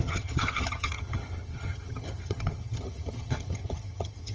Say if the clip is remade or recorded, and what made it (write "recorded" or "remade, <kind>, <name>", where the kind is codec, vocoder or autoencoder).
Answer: remade, vocoder, HiFi-GAN